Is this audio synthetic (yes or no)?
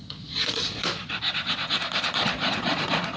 yes